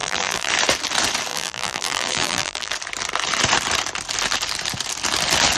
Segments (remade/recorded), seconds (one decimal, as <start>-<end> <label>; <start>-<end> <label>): 0.0-0.5 remade; 0.5-1.3 recorded; 1.3-2.7 remade; 2.7-5.6 recorded